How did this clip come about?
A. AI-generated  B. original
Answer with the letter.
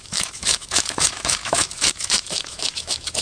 A